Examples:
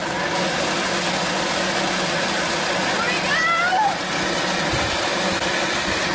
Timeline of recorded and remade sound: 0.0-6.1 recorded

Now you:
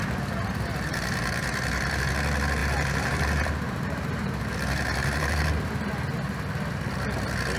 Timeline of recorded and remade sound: 0.0-2.1 remade; 2.1-2.6 recorded; 2.6-5.9 remade; 5.9-7.6 recorded

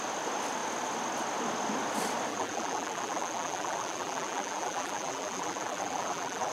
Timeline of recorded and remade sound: 0.0-2.3 recorded; 2.3-6.5 remade

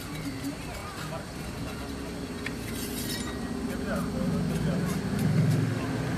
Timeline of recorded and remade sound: 0.0-5.3 recorded; 5.3-5.8 remade; 5.8-6.2 recorded